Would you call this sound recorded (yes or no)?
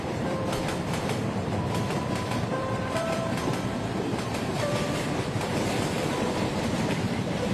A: no